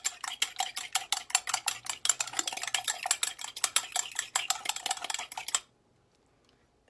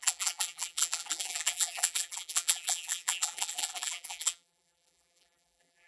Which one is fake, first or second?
second